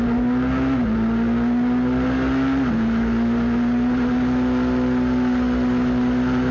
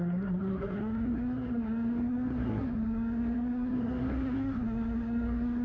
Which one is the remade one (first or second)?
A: second